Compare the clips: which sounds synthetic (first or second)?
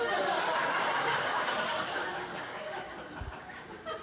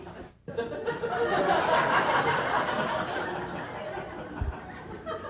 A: first